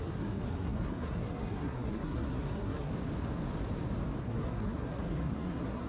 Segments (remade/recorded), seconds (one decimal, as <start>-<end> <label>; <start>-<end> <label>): 0.0-2.9 remade; 2.9-4.2 recorded; 4.2-5.9 remade